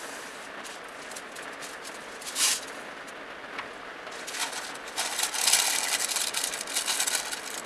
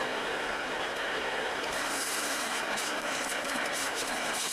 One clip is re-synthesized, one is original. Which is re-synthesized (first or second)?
second